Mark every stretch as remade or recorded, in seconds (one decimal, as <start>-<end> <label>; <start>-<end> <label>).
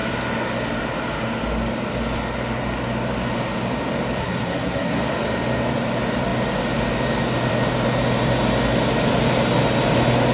0.0-4.2 recorded; 4.2-5.0 remade; 5.0-10.3 recorded